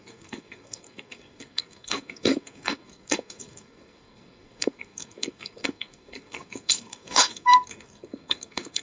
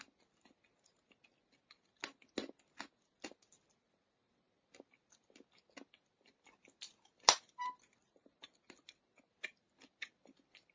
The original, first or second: second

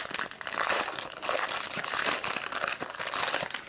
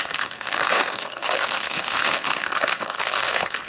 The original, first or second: first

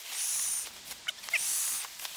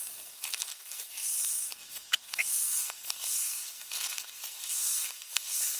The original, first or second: first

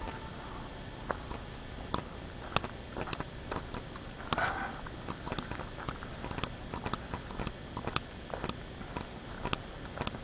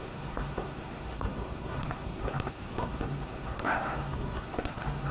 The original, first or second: first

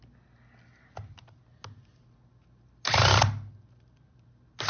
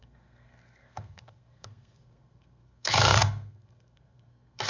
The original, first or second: first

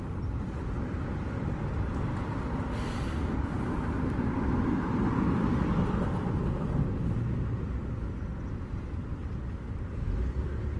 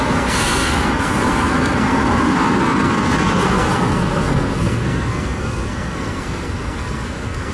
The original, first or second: first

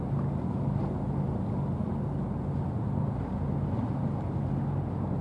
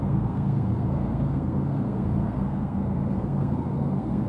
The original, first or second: first